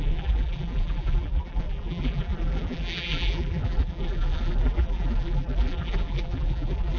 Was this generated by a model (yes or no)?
yes